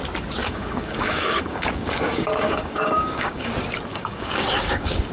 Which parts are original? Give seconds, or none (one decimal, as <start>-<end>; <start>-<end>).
0.0-0.4; 3.5-3.9